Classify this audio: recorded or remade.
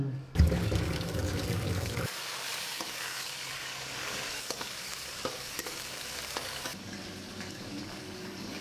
remade